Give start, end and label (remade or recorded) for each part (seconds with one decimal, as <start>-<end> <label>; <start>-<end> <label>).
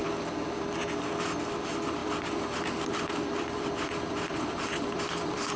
0.0-0.7 remade; 0.7-2.0 recorded; 2.0-5.6 remade